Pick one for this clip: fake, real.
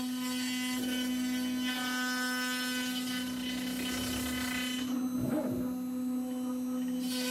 real